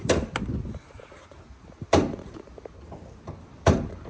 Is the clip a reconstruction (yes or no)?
yes